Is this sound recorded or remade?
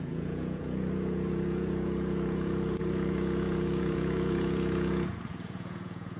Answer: remade